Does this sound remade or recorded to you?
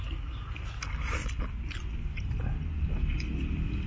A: recorded